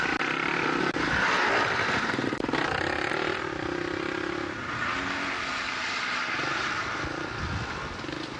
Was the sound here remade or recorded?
recorded